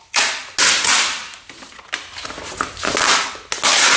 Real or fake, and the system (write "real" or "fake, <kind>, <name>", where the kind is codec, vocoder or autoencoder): real